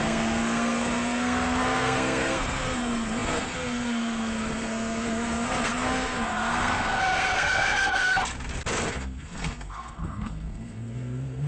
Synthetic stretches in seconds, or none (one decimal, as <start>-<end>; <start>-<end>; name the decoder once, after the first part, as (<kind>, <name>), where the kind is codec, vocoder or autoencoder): 0.0-8.2 (codec, SNAC); 8.9-11.5